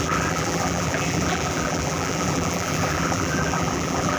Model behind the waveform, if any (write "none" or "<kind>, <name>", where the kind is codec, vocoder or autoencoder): vocoder, BigVGAN v2